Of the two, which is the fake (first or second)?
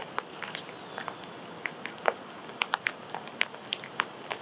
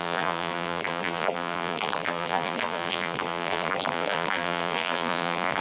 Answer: second